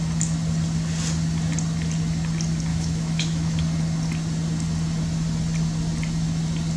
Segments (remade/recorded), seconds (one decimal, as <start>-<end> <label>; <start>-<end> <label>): 0.0-2.7 recorded; 2.7-3.6 remade; 3.6-6.8 recorded